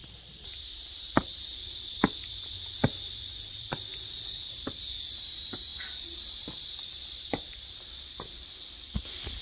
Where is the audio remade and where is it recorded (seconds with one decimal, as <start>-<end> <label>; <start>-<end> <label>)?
0.0-9.4 remade